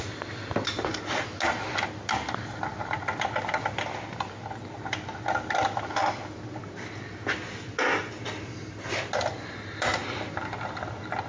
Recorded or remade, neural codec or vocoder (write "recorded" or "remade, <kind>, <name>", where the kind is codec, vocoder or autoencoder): recorded